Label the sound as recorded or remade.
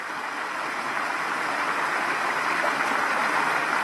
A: recorded